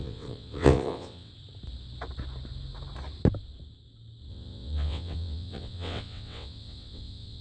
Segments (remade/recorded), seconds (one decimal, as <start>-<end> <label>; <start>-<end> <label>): 0.0-1.3 remade; 1.3-4.3 recorded; 4.3-7.4 remade